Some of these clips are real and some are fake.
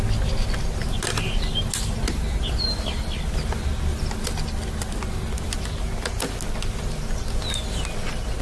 real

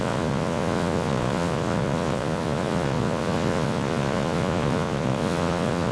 fake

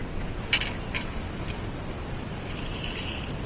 real